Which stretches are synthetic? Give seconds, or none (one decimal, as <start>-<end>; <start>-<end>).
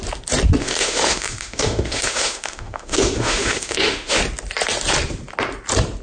0.6-4.2